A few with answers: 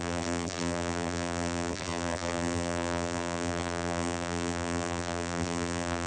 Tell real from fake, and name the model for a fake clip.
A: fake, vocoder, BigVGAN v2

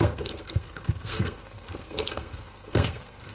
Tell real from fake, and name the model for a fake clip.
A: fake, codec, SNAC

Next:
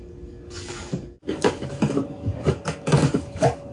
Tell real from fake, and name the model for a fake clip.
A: fake, codec, DAC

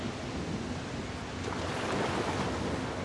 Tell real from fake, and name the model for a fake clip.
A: real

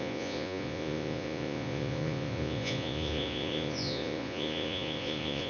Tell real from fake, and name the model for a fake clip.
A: fake, vocoder, Vocos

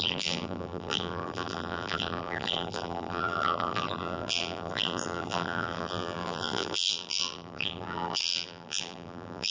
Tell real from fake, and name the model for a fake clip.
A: fake, vocoder, BigVGAN v2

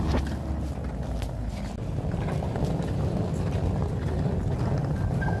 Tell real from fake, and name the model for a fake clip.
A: real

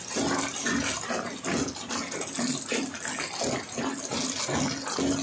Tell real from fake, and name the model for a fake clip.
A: real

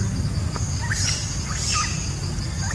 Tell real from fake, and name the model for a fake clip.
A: real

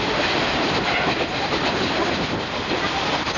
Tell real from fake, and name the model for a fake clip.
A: real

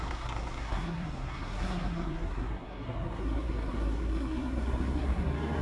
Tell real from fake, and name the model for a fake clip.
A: fake, codec, SNAC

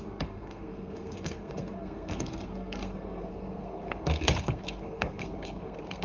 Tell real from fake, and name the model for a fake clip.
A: fake, codec, SNAC